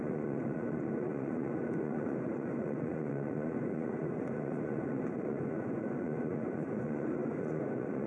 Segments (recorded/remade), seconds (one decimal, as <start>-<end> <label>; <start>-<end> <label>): 0.0-8.1 remade